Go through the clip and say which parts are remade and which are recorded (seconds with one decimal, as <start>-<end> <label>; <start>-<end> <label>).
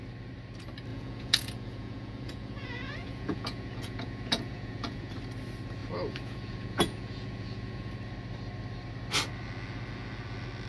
0.0-0.9 recorded; 0.9-5.1 remade; 5.1-5.8 recorded; 5.8-7.9 remade; 7.9-10.7 recorded